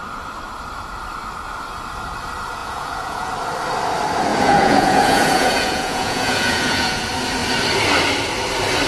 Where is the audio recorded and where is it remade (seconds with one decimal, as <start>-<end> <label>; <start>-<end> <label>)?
0.0-2.6 recorded; 2.6-3.3 remade; 3.3-4.3 recorded; 4.3-7.0 remade; 7.0-8.9 recorded

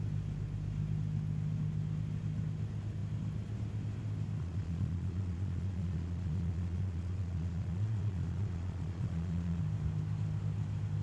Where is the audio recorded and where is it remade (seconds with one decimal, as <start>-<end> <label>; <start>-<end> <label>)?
0.0-4.4 recorded; 4.4-9.6 remade; 9.6-11.0 recorded

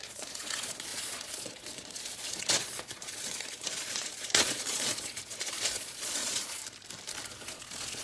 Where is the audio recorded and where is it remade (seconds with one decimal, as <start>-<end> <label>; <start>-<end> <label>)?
0.0-6.6 remade; 6.6-7.3 recorded; 7.3-8.0 remade

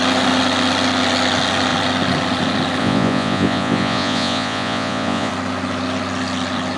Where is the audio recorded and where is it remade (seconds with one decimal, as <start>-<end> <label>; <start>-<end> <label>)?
0.0-2.8 recorded; 2.8-5.3 remade; 5.3-6.8 recorded

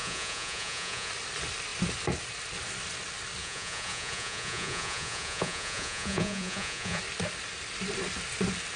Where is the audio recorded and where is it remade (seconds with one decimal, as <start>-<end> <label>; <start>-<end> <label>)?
0.0-1.1 remade; 1.1-3.4 recorded; 3.4-7.0 remade; 7.0-8.8 recorded

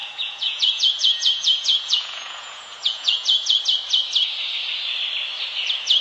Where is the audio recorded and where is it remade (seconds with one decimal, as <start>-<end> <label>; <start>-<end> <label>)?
0.0-3.6 remade; 3.6-6.0 recorded

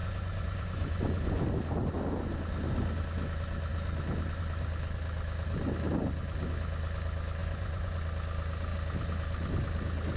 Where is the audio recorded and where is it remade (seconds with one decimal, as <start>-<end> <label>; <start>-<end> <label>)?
0.0-1.5 remade; 1.5-7.4 recorded; 7.4-8.0 remade; 8.0-10.2 recorded

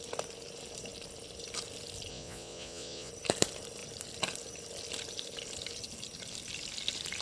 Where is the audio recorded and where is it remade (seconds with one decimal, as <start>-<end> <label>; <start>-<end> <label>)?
0.0-2.1 recorded; 2.1-3.1 remade; 3.1-7.2 recorded